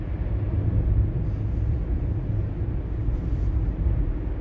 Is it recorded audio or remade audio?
recorded